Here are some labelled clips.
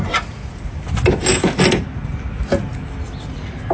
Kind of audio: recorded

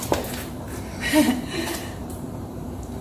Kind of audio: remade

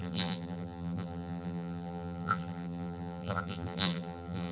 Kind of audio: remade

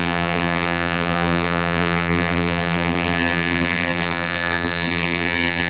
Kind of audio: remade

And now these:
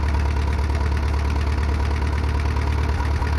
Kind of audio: recorded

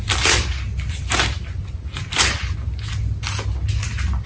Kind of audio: recorded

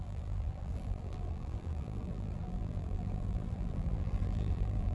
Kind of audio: remade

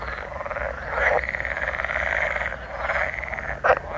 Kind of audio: recorded